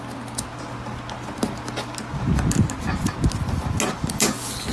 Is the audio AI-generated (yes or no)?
no